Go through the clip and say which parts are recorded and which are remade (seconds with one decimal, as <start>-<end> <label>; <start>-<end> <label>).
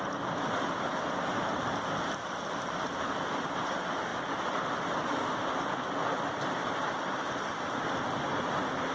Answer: 0.0-8.9 recorded